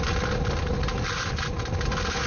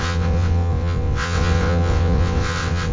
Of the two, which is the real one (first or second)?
first